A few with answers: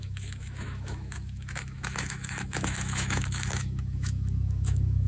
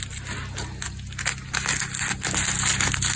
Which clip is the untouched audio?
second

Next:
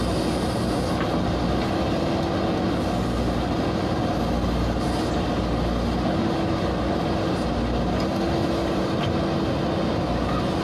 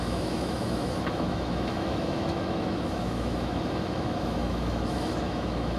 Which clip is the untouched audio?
first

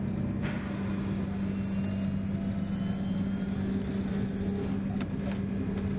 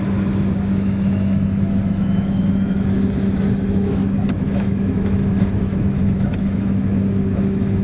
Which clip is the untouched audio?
first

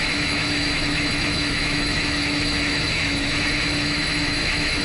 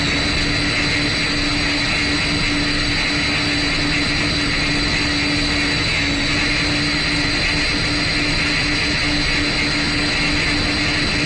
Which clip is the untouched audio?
second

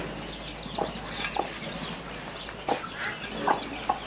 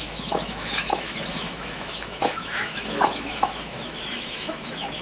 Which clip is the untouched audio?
first